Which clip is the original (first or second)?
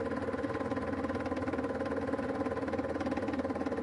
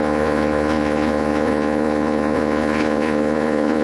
first